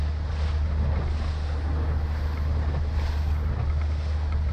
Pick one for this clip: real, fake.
real